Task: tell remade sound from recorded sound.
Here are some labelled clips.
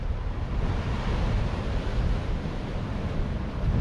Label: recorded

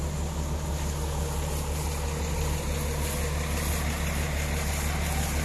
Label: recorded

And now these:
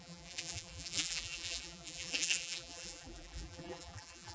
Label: remade